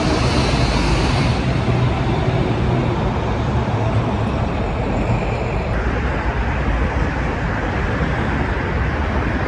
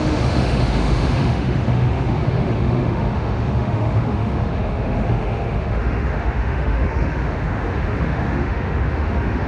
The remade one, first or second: second